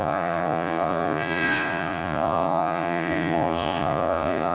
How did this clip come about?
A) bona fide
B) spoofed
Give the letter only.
B